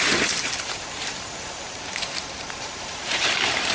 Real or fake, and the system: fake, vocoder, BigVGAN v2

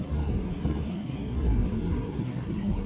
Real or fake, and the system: fake, codec, SNAC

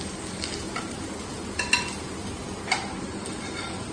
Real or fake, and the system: real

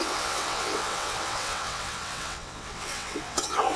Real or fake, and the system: fake, vocoder, WaveNeXt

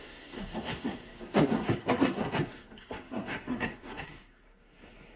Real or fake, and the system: fake, codec, SNAC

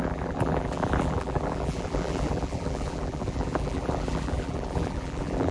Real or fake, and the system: fake, vocoder, BigVGAN v2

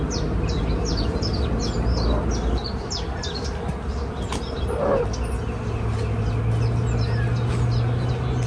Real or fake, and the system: real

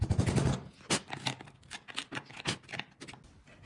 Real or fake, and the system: real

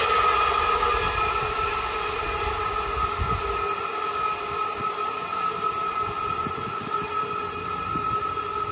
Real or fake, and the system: real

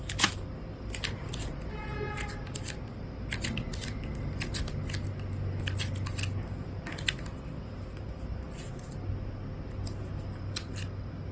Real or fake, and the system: real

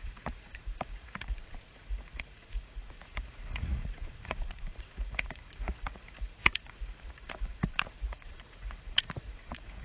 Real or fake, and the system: fake, vocoder, Vocos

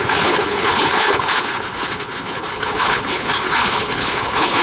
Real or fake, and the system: fake, codec, HILCodec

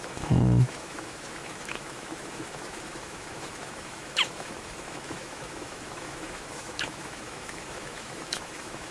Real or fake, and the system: fake, autoencoder, DAC-VAE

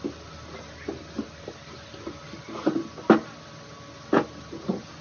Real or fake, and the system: real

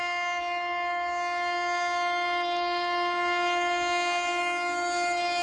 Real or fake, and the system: real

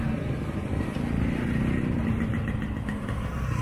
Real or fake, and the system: real